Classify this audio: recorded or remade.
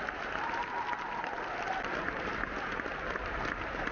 recorded